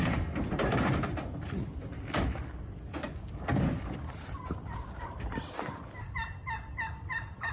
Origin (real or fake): real